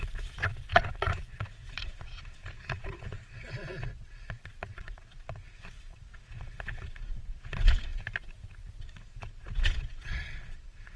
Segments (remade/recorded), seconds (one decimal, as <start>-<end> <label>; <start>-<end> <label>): 0.0-7.9 remade; 7.9-8.8 recorded; 8.8-11.0 remade